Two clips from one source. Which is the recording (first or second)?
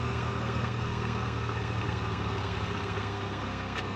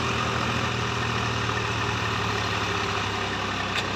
second